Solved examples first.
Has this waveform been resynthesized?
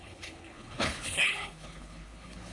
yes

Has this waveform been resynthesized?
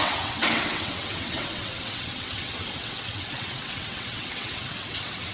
yes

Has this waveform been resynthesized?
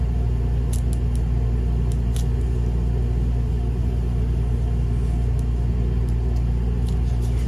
no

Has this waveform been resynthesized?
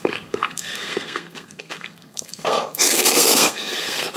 yes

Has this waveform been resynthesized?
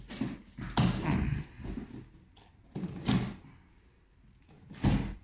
no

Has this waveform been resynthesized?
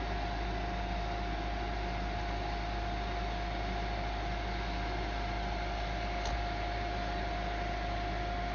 no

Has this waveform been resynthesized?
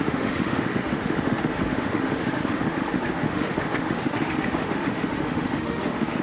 yes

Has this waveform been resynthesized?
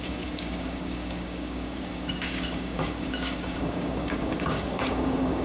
yes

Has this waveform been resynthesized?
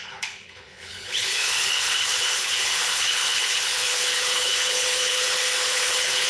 yes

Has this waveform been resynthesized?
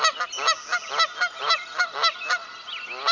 no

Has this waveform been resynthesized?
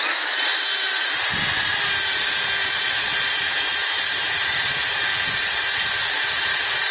no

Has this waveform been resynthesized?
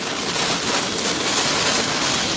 no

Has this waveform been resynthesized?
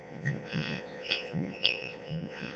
yes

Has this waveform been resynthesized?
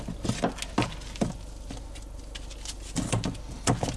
no